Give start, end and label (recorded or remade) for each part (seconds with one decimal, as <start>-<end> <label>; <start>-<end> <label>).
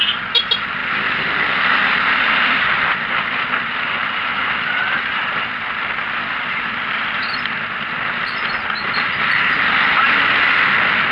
0.0-0.8 recorded; 0.8-2.9 remade; 2.9-4.0 recorded; 4.0-7.2 remade; 7.2-11.1 recorded